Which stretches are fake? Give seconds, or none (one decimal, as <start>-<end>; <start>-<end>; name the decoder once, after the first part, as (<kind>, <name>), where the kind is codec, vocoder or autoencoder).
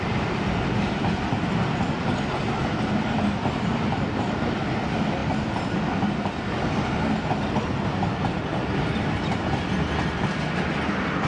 none